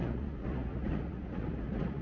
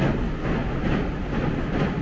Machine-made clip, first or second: first